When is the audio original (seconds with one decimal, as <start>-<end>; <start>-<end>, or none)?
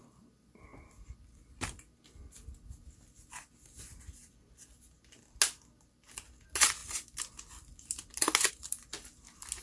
0.0-9.6